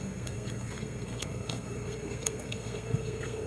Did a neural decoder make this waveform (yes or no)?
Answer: yes